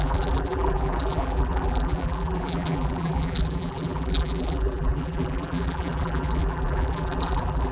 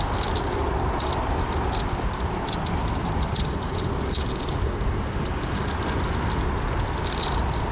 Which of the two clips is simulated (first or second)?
first